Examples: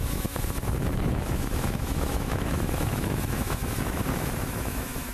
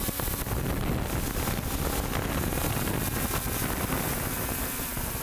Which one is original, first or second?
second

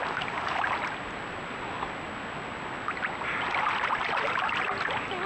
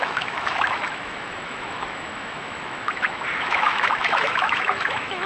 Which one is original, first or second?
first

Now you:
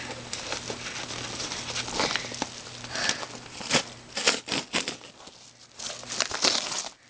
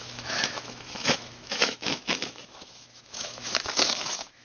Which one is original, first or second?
first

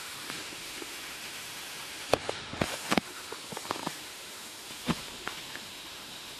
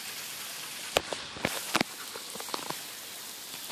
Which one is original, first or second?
second